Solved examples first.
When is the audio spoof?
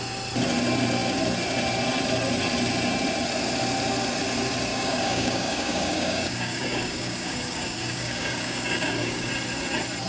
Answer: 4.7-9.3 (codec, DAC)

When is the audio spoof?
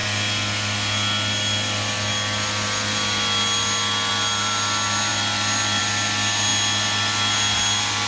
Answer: none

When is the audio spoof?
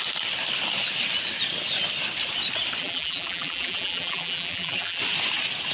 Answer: 2.8-5.0 (vocoder, BigVGAN v2)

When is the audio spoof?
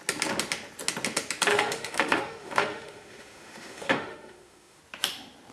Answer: 1.5-4.8 (autoencoder, DAC-VAE)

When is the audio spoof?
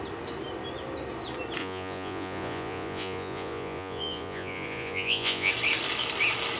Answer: 1.6-5.5 (vocoder, Vocos)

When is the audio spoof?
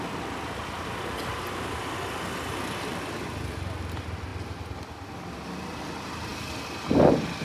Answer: none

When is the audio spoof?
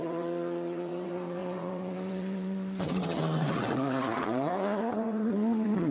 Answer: 0.0-5.9 (vocoder, WaveNeXt)